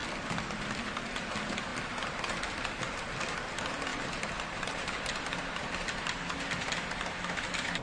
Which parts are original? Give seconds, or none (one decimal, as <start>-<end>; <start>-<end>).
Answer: 0.0-3.9; 5.6-7.8